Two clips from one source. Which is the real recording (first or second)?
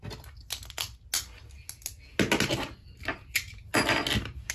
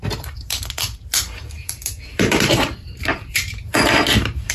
first